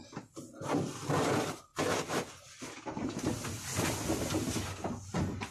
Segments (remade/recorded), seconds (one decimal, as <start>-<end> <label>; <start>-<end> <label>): 0.0-5.5 recorded